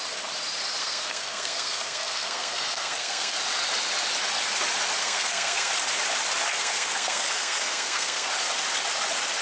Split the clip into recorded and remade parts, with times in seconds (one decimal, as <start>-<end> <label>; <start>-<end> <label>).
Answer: 0.0-0.8 recorded; 0.8-3.4 remade; 3.4-5.0 recorded; 5.0-5.7 remade; 5.7-6.5 recorded; 6.5-8.3 remade; 8.3-9.4 recorded